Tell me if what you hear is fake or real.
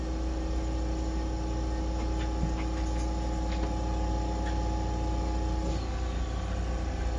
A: real